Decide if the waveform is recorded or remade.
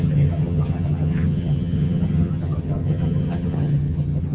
remade